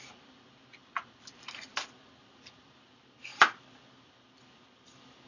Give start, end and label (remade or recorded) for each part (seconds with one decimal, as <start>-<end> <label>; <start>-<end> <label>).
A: 0.0-1.7 remade; 1.7-2.2 recorded; 2.2-5.3 remade